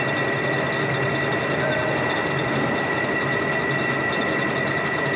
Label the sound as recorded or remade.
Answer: recorded